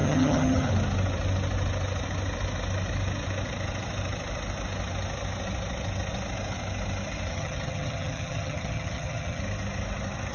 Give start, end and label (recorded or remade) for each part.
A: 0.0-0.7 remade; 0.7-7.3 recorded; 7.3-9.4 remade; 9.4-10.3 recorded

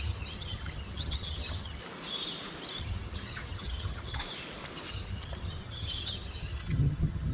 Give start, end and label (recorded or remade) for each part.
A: 0.0-1.8 remade; 1.8-2.8 recorded; 2.8-4.2 remade; 4.2-4.9 recorded; 4.9-7.3 remade

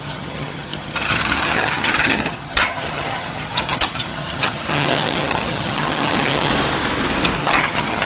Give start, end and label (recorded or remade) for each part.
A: 0.0-6.5 remade; 6.5-7.4 recorded; 7.4-8.0 remade

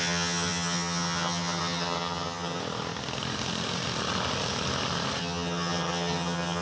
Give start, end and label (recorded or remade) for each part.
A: 0.0-2.6 remade; 2.6-5.2 recorded; 5.2-6.6 remade

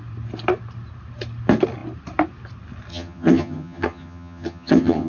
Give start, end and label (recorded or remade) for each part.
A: 0.0-2.9 recorded; 2.9-5.1 remade

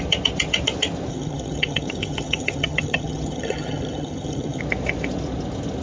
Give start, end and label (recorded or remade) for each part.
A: 0.0-1.1 recorded; 1.1-4.6 remade; 4.6-5.8 recorded